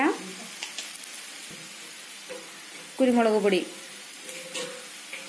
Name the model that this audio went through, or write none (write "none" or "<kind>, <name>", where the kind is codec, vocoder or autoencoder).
none